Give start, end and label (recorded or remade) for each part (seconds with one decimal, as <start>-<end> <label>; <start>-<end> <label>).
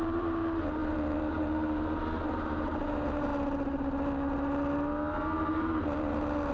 0.0-3.3 remade; 3.3-5.4 recorded; 5.4-6.5 remade